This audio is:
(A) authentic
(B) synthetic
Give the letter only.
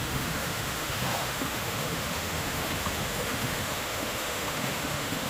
B